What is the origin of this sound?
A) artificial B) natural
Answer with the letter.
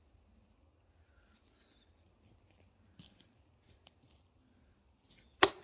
B